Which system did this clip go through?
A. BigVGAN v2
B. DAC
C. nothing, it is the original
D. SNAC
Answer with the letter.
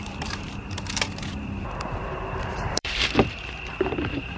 A